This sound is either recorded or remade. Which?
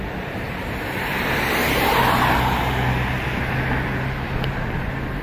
recorded